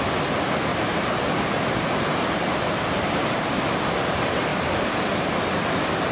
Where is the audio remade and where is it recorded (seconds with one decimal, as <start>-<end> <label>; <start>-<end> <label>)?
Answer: 0.0-0.7 recorded; 0.7-3.6 remade; 3.6-4.5 recorded; 4.5-5.3 remade; 5.3-6.1 recorded